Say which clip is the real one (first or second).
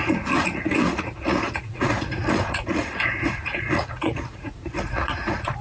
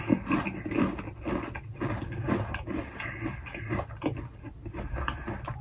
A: second